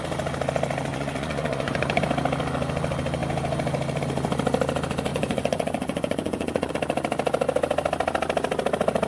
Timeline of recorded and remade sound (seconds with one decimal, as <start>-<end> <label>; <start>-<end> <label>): 0.0-0.9 recorded; 0.9-2.0 remade; 2.0-5.1 recorded; 5.1-6.7 remade; 6.7-9.1 recorded

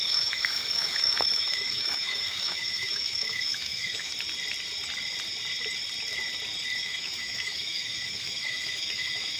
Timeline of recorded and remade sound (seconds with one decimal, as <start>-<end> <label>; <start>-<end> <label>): 0.0-4.1 remade; 4.1-6.8 recorded; 6.8-9.4 remade

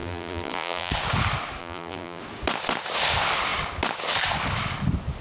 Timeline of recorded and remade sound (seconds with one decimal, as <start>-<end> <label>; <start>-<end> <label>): 0.0-0.9 remade; 0.9-1.6 recorded; 1.6-2.2 remade; 2.2-5.2 recorded

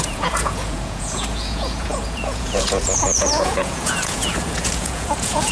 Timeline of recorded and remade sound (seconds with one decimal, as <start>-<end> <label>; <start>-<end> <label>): 0.0-5.5 remade

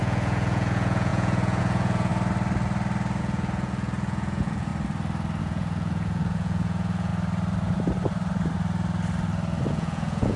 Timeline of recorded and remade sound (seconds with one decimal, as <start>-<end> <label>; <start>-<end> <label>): 0.0-2.1 remade; 2.1-3.2 recorded; 3.2-4.7 remade; 4.7-5.4 recorded; 5.4-7.1 remade; 7.1-9.7 recorded; 9.7-10.4 remade

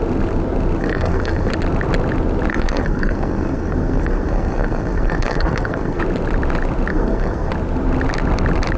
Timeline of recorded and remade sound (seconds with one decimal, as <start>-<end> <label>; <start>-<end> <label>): 0.0-0.8 recorded; 0.8-1.5 remade; 1.5-2.5 recorded; 2.5-6.0 remade; 6.0-6.9 recorded; 6.9-7.5 remade; 7.5-8.8 recorded

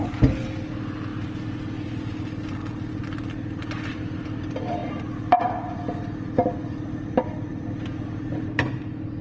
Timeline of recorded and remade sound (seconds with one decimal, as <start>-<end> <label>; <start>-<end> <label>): 0.0-9.2 recorded